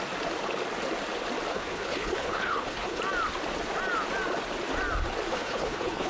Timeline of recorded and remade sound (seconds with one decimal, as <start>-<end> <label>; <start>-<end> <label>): 0.0-1.5 recorded; 1.5-3.0 remade; 3.0-5.3 recorded; 5.3-6.1 remade